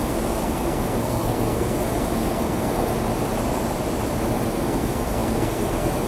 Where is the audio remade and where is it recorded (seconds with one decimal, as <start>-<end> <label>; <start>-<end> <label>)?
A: 0.0-2.9 remade; 2.9-4.5 recorded; 4.5-6.1 remade